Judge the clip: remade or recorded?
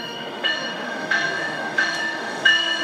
remade